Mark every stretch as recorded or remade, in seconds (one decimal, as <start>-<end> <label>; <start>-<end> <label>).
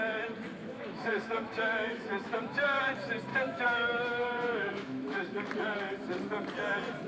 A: 0.0-0.6 recorded; 0.6-2.8 remade; 2.8-3.3 recorded; 3.3-5.5 remade; 5.5-7.1 recorded